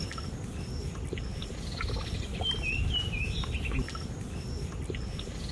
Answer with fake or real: real